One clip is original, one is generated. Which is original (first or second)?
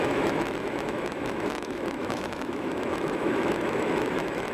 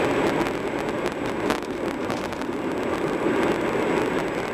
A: second